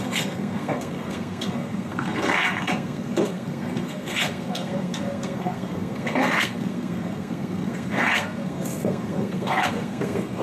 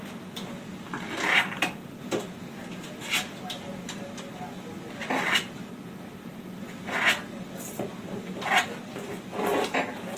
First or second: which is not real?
first